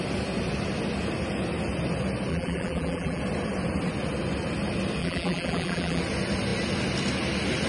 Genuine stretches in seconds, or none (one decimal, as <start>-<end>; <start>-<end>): 0.0-2.3; 3.2-5.0; 6.0-7.7